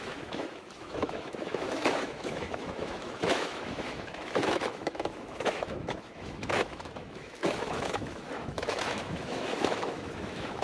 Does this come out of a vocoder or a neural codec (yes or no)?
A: yes